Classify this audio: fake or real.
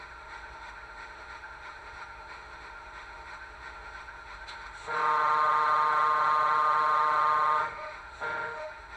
fake